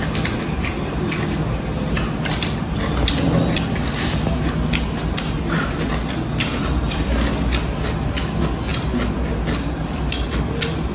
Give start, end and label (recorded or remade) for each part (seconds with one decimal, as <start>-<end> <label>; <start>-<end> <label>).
0.0-10.9 recorded